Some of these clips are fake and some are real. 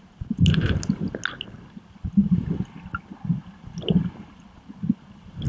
real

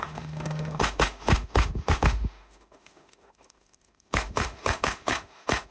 fake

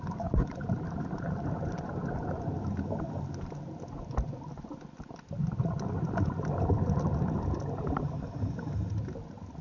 real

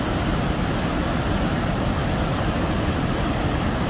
real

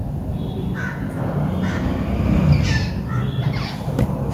real